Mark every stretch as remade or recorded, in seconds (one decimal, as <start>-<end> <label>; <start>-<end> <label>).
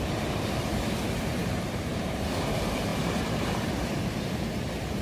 0.0-5.0 remade